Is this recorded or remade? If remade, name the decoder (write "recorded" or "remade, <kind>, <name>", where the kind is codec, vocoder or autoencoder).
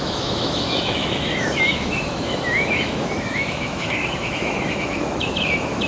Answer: remade, autoencoder, DAC-VAE